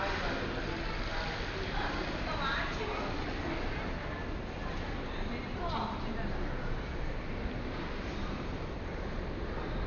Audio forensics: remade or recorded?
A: recorded